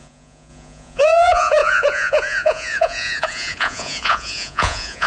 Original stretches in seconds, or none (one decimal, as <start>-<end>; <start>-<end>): none